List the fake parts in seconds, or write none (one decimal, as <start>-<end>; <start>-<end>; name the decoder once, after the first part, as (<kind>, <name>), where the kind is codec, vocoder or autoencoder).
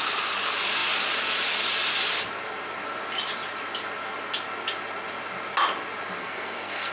6.2-6.9 (codec, SNAC)